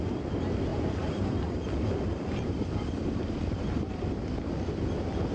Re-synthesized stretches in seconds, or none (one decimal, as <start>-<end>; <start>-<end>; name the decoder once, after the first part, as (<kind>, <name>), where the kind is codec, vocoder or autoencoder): 0.7-3.9 (vocoder, BigVGAN v2)